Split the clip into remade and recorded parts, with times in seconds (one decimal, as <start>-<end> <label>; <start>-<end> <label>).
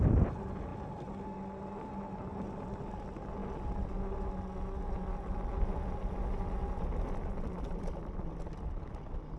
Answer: 0.0-9.4 recorded